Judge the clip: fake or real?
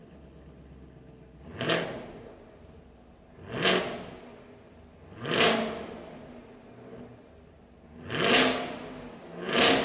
real